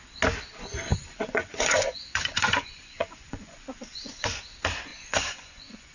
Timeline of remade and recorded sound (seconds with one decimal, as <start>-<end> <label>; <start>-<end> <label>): 0.0-0.9 recorded; 0.9-4.4 remade; 4.4-4.9 recorded; 4.9-5.9 remade